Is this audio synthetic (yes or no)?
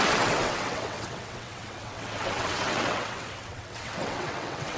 yes